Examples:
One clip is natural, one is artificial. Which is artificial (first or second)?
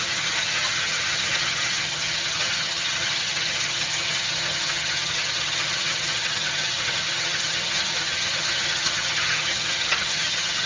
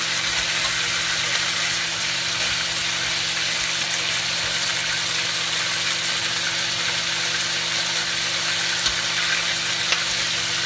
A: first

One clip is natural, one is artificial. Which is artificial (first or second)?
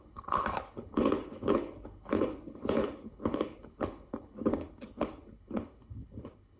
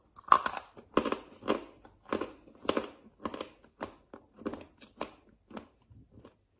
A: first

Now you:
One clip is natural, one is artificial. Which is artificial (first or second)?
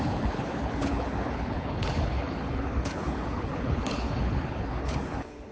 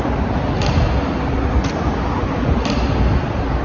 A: first